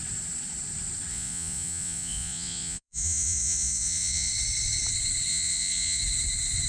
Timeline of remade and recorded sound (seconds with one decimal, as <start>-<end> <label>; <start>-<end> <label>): 0.0-1.1 recorded; 1.1-4.3 remade; 4.3-5.3 recorded; 5.3-6.0 remade; 6.0-6.7 recorded

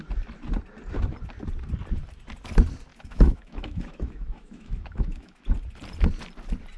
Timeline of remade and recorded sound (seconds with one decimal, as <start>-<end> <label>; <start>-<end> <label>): 0.0-2.9 recorded; 2.9-5.4 remade; 5.4-6.8 recorded